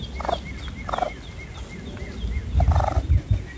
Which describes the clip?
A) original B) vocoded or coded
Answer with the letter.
A